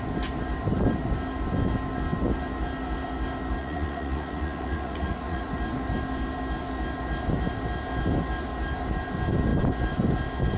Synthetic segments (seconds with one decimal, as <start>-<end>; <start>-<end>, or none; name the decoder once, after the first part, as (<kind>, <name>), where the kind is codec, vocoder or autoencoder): 3.6-5.5 (vocoder, Vocos)